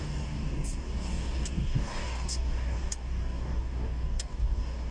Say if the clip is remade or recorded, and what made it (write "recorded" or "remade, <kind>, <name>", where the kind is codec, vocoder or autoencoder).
remade, codec, DAC